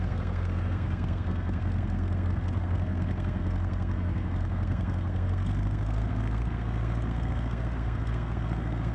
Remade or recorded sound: remade